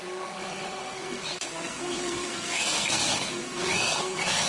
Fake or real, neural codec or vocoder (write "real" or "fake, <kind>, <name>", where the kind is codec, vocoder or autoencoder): fake, codec, SNAC